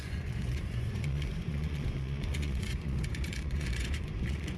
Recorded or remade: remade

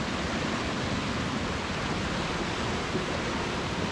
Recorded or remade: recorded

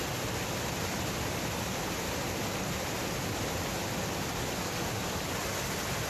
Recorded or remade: recorded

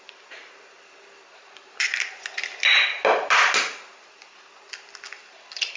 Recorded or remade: recorded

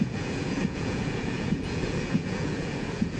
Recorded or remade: remade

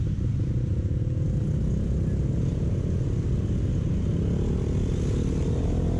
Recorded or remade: recorded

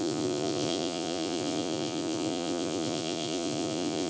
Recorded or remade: remade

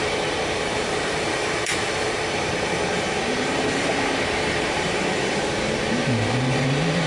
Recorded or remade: remade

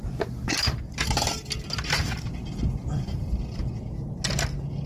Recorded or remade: recorded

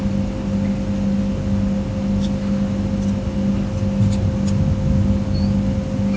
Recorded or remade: recorded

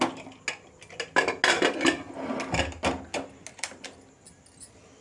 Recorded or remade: recorded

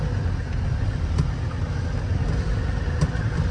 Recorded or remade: recorded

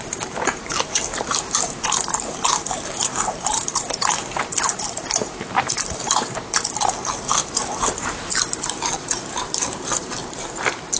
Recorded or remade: remade